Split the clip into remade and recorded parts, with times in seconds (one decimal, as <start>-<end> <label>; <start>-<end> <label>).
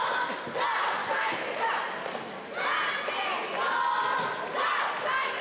0.0-1.0 recorded; 1.0-1.5 remade; 1.5-5.4 recorded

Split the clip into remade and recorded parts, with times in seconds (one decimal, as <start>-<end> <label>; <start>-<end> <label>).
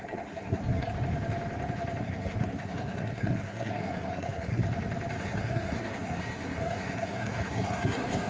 0.0-0.9 remade; 0.9-2.0 recorded; 2.0-4.6 remade; 4.6-5.2 recorded; 5.2-8.3 remade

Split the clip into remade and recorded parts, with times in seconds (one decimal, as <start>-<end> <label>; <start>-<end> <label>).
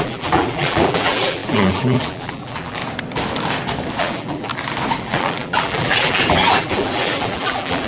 0.0-2.8 remade; 2.8-4.0 recorded; 4.0-4.5 remade; 4.5-5.0 recorded; 5.0-7.9 remade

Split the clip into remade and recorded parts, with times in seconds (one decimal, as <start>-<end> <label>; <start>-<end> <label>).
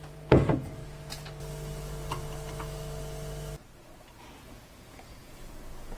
0.0-0.8 remade; 0.8-4.2 recorded; 4.2-6.0 remade